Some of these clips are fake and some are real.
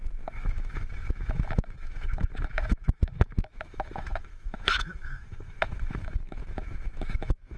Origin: fake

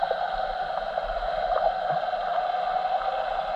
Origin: fake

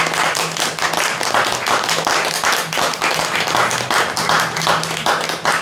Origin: real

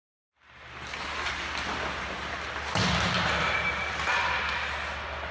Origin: real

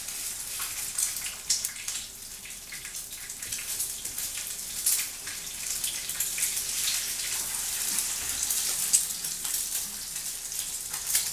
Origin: fake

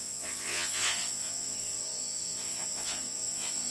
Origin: fake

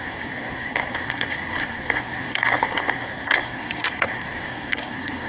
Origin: fake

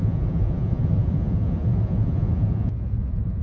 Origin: fake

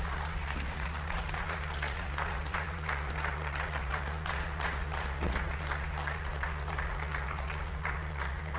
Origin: fake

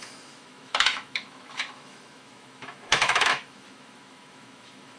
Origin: fake